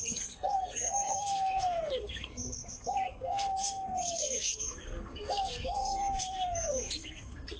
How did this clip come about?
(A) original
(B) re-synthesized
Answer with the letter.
B